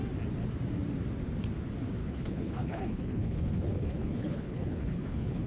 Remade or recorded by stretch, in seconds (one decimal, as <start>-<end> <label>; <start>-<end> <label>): 0.0-2.0 recorded; 2.0-5.5 remade